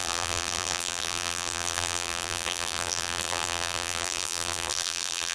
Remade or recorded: remade